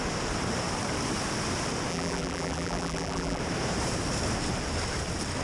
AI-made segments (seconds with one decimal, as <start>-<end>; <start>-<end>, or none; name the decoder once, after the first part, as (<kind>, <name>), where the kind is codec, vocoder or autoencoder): 1.9-3.4 (vocoder, BigVGAN v2)